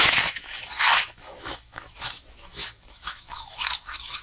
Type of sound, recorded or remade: remade